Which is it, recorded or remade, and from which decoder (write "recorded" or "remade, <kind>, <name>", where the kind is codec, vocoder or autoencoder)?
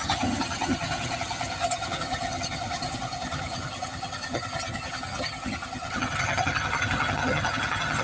remade, vocoder, HiFi-GAN